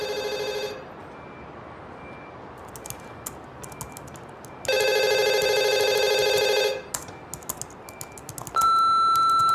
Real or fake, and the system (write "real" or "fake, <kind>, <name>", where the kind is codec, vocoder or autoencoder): real